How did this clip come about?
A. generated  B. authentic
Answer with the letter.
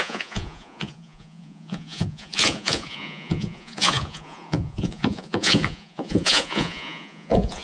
A